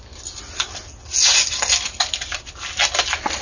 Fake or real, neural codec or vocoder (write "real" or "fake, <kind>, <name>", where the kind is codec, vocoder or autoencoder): real